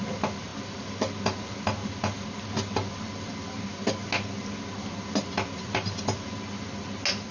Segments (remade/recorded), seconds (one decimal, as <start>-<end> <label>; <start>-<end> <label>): 0.0-7.3 recorded